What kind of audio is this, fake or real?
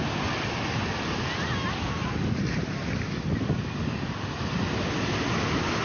real